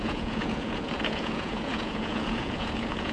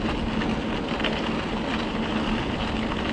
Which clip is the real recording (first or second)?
second